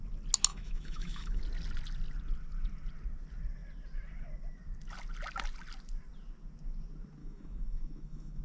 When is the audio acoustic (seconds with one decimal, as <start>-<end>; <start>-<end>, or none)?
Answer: 0.0-0.5; 1.4-7.2